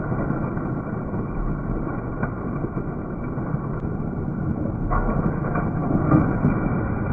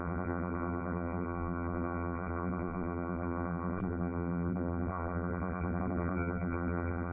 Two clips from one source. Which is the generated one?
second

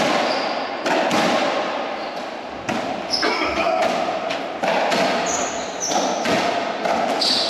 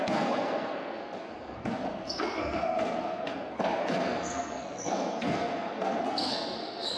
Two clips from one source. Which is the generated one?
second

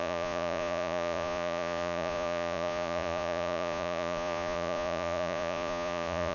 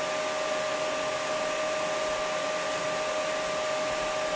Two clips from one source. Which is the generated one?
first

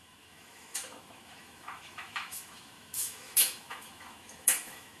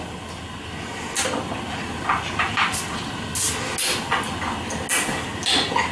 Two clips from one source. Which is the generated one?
first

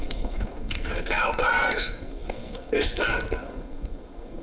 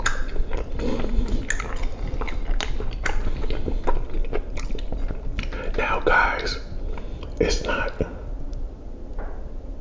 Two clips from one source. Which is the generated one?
first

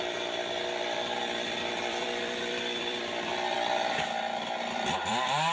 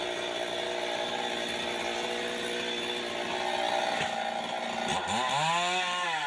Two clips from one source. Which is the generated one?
first